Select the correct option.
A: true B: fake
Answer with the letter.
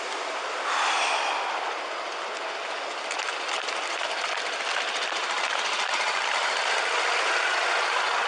A